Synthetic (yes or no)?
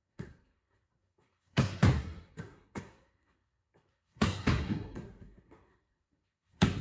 yes